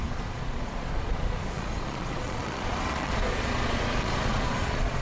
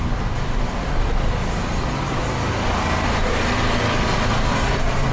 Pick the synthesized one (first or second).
first